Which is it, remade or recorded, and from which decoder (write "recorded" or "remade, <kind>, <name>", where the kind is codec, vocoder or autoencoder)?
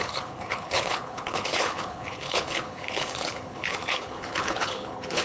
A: remade, codec, HILCodec